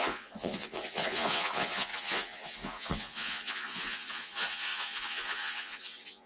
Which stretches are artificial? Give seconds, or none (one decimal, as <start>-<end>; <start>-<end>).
0.0-6.3